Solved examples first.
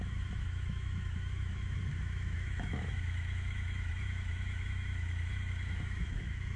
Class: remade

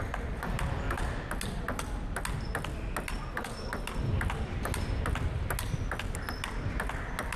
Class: recorded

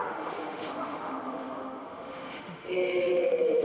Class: remade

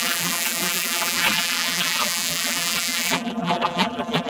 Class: remade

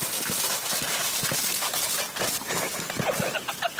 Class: recorded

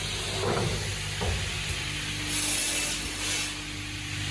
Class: recorded